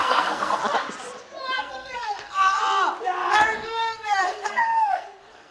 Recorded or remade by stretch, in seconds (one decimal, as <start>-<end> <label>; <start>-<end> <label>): 0.0-0.6 remade; 0.6-1.6 recorded; 1.6-2.6 remade; 2.6-3.3 recorded; 3.3-5.5 remade